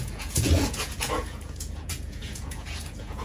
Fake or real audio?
fake